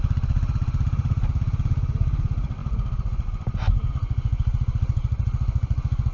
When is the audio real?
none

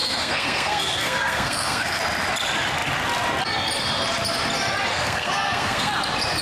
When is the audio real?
2.0-4.9; 5.9-6.4

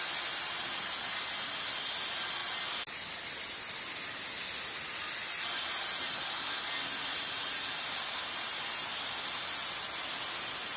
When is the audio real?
0.0-10.8

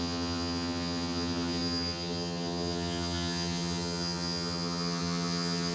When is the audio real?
none

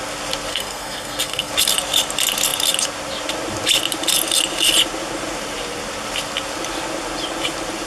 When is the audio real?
0.0-0.5; 1.5-7.9

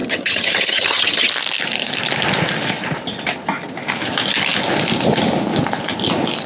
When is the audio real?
1.3-6.5